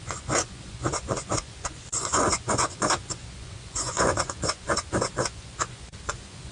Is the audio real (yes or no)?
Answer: no